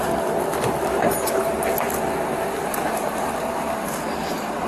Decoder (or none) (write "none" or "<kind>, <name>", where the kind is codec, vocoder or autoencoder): none